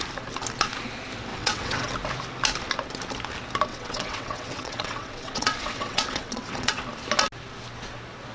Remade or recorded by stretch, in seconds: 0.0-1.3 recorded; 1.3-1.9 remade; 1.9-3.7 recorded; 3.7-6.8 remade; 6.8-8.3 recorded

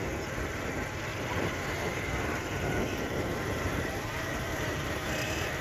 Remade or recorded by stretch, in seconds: 0.0-1.1 recorded; 1.1-2.0 remade; 2.0-2.9 recorded; 2.9-5.6 remade

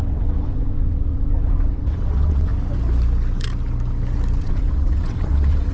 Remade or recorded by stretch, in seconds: 0.0-2.5 remade; 2.5-4.4 recorded; 4.4-5.7 remade

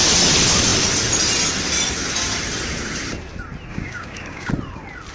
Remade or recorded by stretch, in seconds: 0.0-3.7 recorded; 3.7-4.5 remade; 4.5-5.1 recorded

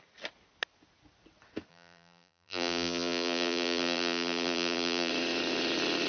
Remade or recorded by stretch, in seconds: 0.0-1.7 recorded; 1.7-5.1 remade; 5.1-6.1 recorded

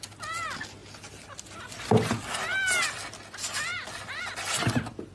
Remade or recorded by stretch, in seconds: 0.0-5.1 recorded

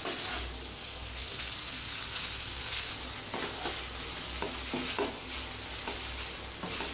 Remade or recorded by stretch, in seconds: 0.0-0.7 recorded; 0.7-2.9 remade; 2.9-6.9 recorded